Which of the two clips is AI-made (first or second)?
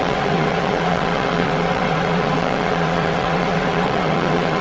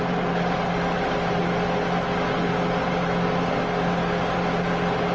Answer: first